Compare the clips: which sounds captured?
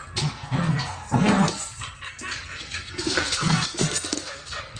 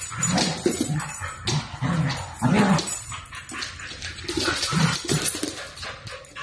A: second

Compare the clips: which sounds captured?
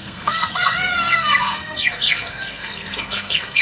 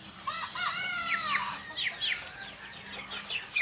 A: second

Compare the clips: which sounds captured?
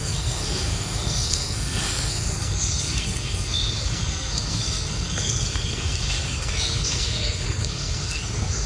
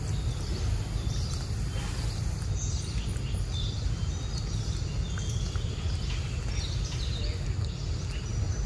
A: second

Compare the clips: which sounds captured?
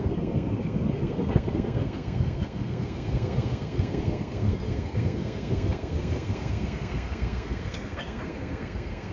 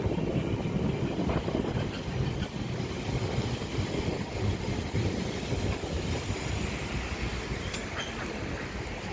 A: second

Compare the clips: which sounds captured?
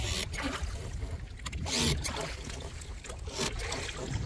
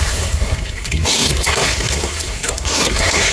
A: first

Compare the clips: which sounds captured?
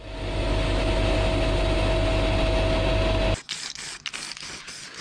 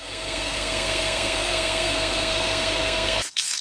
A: first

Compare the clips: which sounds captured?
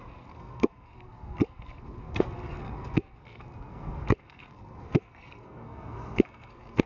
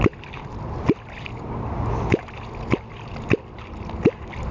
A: second